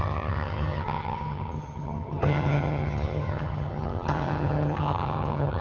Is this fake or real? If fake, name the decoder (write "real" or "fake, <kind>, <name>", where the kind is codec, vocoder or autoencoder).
fake, vocoder, HiFi-GAN